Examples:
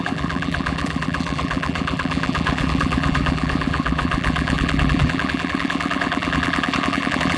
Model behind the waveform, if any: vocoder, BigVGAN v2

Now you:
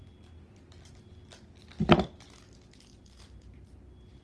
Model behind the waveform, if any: none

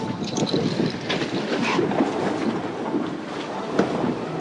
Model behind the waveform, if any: none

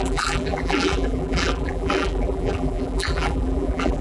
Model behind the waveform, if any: vocoder, BigVGAN v2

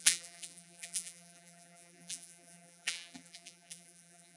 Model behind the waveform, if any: vocoder, BigVGAN v2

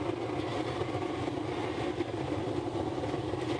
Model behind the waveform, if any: none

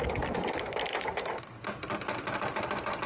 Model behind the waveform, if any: none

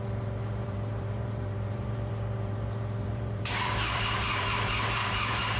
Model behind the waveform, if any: vocoder, BigVGAN v2